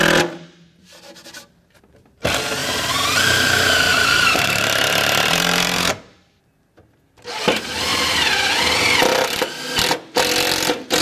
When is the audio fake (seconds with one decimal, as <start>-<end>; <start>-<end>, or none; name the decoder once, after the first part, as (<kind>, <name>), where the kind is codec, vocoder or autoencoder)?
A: 2.6-6.4 (vocoder, BigVGAN v2); 7.9-8.6